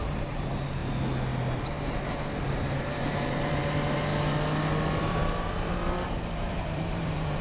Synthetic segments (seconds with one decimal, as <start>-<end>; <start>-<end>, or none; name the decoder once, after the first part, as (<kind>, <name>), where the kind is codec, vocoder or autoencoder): 0.0-0.8 (vocoder, BigVGAN v2); 2.4-4.1; 5.0-7.4